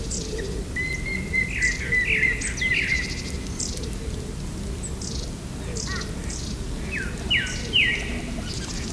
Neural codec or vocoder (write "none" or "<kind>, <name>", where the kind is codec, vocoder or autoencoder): none